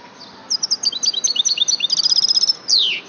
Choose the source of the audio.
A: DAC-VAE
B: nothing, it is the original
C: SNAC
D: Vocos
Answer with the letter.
B